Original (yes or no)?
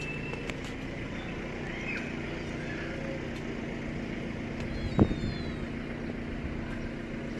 yes